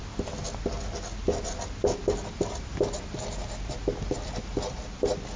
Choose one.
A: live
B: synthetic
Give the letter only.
A